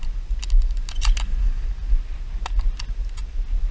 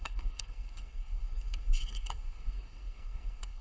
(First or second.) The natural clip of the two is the first